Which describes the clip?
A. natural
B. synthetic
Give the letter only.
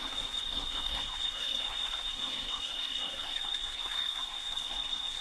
B